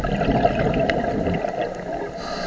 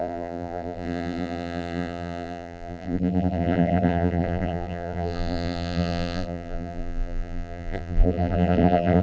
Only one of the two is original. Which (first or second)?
first